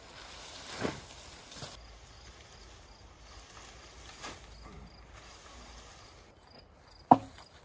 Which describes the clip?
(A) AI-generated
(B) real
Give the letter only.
B